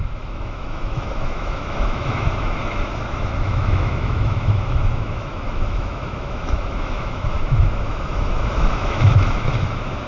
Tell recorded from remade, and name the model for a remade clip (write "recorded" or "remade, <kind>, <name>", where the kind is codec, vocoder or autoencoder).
remade, autoencoder, DAC-VAE